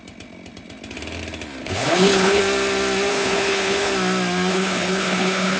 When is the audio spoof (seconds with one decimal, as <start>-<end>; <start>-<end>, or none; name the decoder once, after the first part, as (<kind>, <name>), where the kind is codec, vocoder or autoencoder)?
1.6-2.4 (codec, HILCodec); 3.1-3.9; 4.5-5.6